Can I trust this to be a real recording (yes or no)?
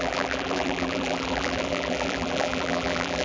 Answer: no